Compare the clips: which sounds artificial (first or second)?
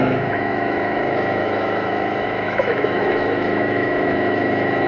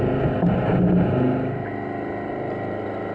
first